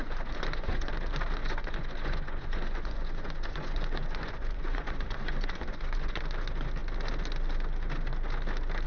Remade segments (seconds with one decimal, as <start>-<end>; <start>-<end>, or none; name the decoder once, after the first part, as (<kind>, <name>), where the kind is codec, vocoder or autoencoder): 0.0-0.9 (vocoder, Vocos); 1.4-6.2